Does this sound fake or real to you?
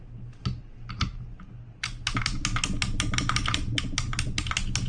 real